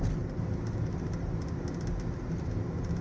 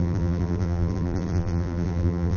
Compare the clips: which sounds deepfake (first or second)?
second